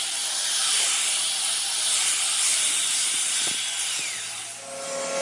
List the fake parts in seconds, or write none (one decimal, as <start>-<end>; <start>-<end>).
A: 0.6-1.2; 2.0-3.6